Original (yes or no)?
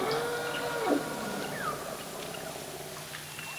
yes